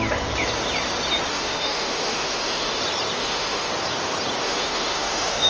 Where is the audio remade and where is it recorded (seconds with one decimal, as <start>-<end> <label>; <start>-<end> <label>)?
0.0-1.3 recorded; 1.3-2.8 remade; 2.8-3.2 recorded; 3.2-3.7 remade; 3.7-4.4 recorded; 4.4-5.5 remade